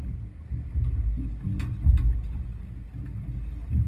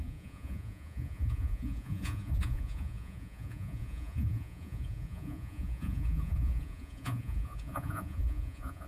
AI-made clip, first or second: second